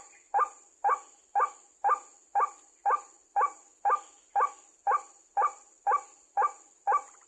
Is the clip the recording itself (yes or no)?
yes